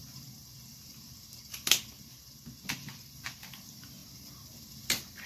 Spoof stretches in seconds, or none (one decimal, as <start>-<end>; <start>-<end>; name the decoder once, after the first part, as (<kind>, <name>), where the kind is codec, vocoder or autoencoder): none

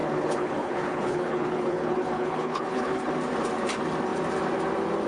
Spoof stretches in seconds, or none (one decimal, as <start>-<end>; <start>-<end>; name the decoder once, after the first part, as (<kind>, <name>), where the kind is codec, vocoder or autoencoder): 0.0-3.1 (codec, HILCodec)

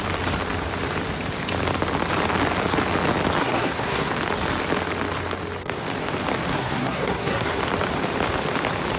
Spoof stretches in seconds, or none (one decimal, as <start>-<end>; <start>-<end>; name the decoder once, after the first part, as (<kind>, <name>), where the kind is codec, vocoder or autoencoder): 3.4-4.1 (codec, SNAC); 6.5-7.6

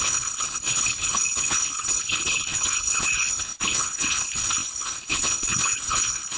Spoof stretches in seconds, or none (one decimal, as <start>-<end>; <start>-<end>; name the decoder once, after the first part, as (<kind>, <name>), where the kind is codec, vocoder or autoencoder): 0.0-6.4 (codec, HILCodec)

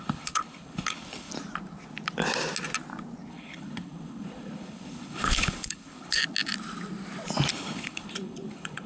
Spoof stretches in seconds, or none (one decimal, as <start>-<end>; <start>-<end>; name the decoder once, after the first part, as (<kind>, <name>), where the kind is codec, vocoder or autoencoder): 0.0-1.3 (codec, HILCodec); 3.3-6.2; 7.5-8.9

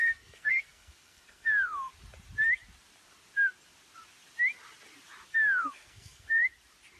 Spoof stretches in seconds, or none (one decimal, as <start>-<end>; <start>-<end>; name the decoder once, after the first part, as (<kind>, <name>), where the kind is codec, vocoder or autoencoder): 0.0-1.9 (codec, SNAC); 5.3-6.4